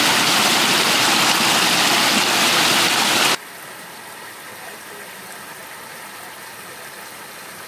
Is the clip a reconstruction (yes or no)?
no